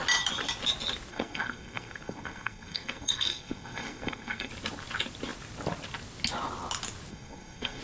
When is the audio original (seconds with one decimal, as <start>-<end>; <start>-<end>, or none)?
0.0-1.1; 4.5-7.1